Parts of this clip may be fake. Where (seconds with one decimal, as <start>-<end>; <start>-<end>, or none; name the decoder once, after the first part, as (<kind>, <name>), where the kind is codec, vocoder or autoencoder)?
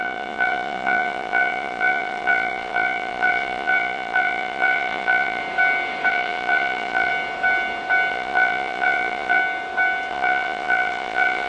0.0-5.4 (vocoder, Vocos); 6.1-7.1; 8.1-9.4; 10.1-11.5